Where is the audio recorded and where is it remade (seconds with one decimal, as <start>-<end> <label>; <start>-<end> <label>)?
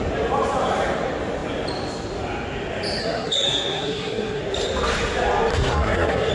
0.0-3.0 recorded; 3.0-4.4 remade; 4.4-5.5 recorded; 5.5-6.3 remade